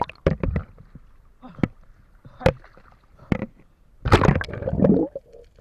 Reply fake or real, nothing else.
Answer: real